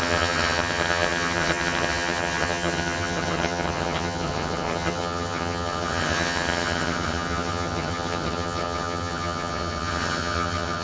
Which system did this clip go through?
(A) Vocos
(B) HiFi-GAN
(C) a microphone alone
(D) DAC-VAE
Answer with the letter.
B